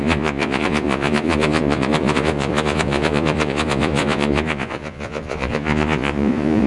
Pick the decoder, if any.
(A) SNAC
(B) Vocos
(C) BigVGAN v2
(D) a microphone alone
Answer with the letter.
B